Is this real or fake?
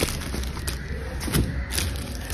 real